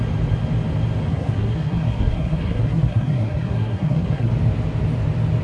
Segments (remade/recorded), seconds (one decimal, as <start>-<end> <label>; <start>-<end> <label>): 0.0-1.1 recorded; 1.1-4.3 remade; 4.3-5.4 recorded